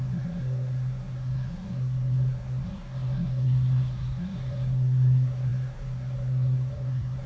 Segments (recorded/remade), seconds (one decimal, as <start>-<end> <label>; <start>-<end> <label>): 0.0-7.3 remade